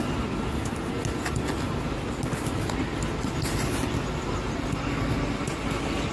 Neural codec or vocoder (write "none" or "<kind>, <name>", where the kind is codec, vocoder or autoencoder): none